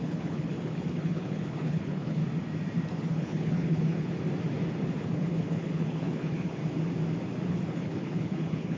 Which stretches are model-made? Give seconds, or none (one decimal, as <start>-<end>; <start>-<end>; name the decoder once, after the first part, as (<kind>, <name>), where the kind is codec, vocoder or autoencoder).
0.0-2.2 (codec, HILCodec); 2.9-4.1; 5.1-6.6; 7.5-8.8